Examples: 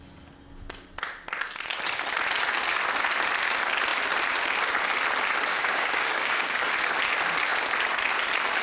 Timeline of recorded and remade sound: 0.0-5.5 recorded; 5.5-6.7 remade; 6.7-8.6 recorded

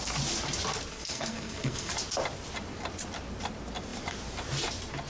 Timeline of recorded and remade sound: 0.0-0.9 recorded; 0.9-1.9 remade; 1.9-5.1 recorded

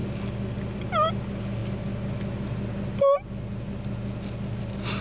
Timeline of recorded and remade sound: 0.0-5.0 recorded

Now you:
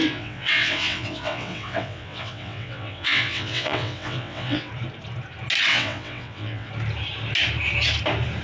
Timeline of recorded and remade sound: 0.0-4.7 remade; 4.7-5.7 recorded; 5.7-6.7 remade; 6.7-8.4 recorded